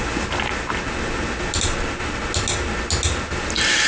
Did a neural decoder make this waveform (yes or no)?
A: no